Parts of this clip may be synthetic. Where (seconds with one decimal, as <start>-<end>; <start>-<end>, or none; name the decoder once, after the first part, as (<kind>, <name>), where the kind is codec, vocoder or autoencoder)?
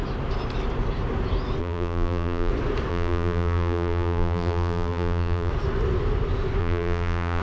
1.6-2.5 (vocoder, BigVGAN v2); 2.9-5.5; 6.6-7.4